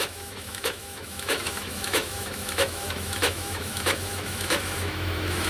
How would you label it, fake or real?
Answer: fake